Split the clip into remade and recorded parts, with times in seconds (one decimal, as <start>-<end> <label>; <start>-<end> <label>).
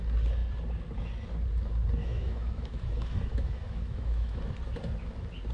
0.0-2.0 recorded; 2.0-4.4 remade; 4.4-5.5 recorded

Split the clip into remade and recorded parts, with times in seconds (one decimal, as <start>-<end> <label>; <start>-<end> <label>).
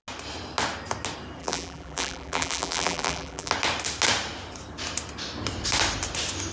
0.0-1.4 recorded; 1.4-3.5 remade; 3.5-6.5 recorded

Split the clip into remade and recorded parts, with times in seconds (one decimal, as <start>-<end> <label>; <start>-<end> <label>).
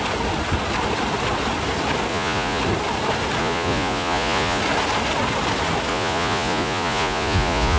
0.0-2.1 recorded; 2.1-2.6 remade; 2.6-3.4 recorded; 3.4-4.6 remade; 4.6-5.9 recorded; 5.9-7.8 remade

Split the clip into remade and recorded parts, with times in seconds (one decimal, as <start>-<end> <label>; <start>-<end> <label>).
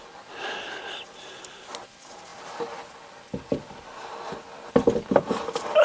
0.0-5.8 recorded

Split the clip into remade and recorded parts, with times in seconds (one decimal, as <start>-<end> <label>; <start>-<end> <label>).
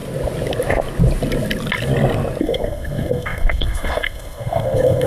0.0-2.4 recorded; 2.4-5.1 remade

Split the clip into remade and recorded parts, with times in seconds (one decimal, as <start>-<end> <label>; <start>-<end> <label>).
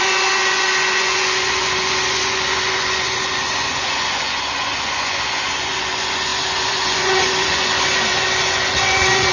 0.0-9.3 remade